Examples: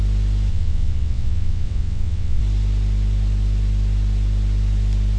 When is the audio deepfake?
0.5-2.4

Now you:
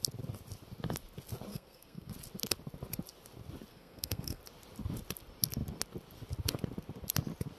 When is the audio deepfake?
1.5-2.1; 3.7-4.4

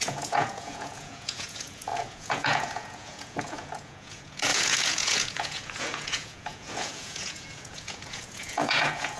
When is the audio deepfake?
0.0-9.2

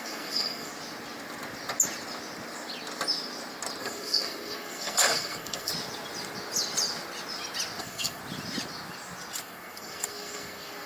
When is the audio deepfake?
0.0-0.7; 3.8-5.7; 7.8-8.2; 9.4-10.9

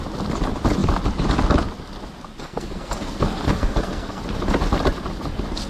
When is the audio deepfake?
2.4-4.2

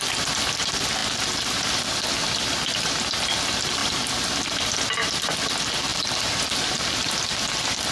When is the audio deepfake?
5.9-7.3

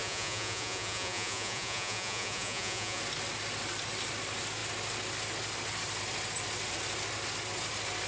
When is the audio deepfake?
0.0-3.0

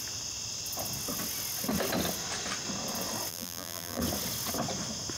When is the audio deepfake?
3.3-4.0